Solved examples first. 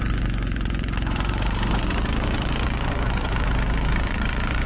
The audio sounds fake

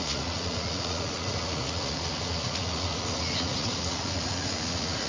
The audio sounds fake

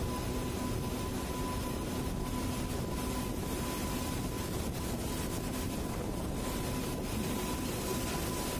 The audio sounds real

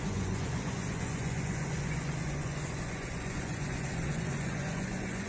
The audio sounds fake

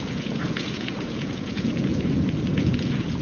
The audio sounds fake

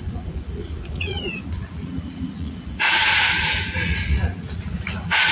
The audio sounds fake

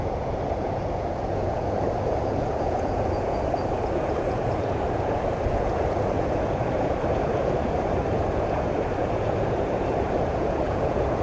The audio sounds fake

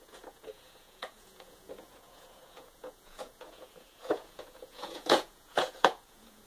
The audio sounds fake